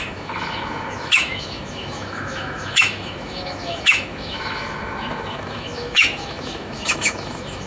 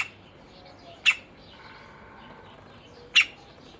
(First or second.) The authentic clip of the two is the second